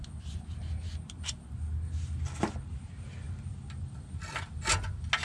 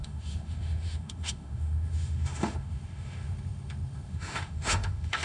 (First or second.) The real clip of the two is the first